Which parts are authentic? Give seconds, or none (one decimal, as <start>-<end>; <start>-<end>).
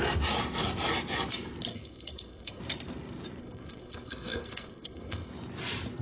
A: 0.0-1.7; 2.6-3.4; 5.3-6.0